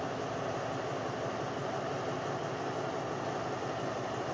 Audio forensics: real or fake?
real